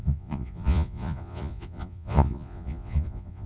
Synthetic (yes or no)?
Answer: yes